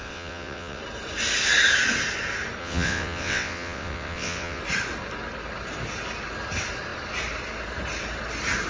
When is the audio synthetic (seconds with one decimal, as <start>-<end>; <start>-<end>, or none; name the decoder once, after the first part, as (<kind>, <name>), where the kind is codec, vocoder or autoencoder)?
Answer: 0.0-0.8 (vocoder, WaveNeXt); 2.6-4.6